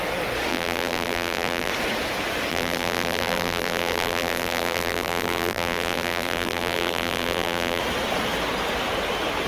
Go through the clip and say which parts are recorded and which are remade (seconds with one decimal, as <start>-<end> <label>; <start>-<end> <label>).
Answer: 0.0-0.5 recorded; 0.5-1.7 remade; 1.7-2.5 recorded; 2.5-7.8 remade; 7.8-9.5 recorded